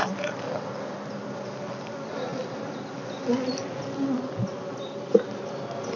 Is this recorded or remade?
recorded